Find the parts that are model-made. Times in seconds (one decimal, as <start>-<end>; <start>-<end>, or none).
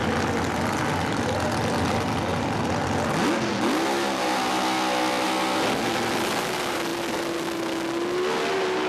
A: none